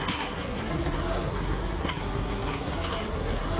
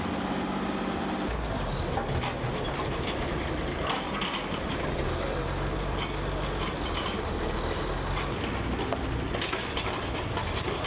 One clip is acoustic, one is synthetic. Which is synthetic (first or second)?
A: first